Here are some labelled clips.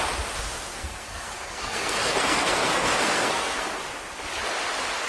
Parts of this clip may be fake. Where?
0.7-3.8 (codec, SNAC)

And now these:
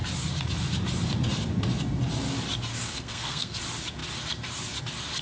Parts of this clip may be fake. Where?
2.7-3.6 (codec, SNAC)

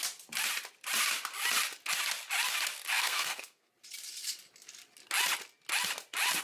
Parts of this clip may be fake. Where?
2.9-3.7 (codec, SNAC)